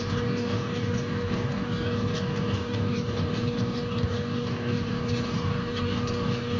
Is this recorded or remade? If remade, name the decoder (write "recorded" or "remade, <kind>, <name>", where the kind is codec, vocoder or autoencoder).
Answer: remade, codec, DAC